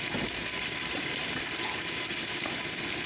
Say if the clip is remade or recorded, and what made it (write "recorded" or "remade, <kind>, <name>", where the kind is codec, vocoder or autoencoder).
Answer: recorded